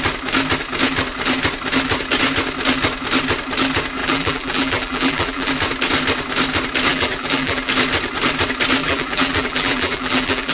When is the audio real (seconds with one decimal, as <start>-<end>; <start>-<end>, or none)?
0.0-4.0; 5.5-6.9; 7.7-8.8